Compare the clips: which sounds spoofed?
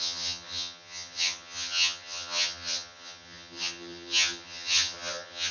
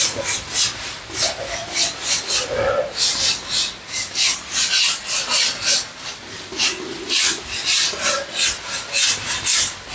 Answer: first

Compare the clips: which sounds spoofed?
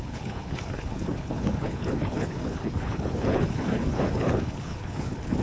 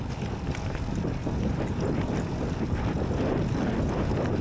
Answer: first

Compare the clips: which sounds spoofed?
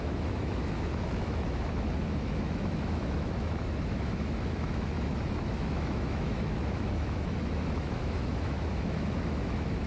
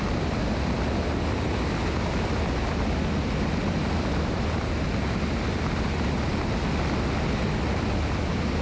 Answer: first